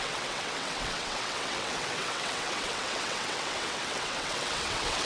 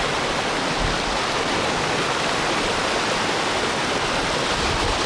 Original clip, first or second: second